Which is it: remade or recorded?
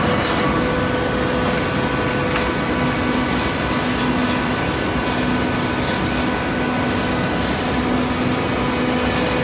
recorded